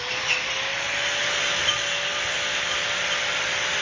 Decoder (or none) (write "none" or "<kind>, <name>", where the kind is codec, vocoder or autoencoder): none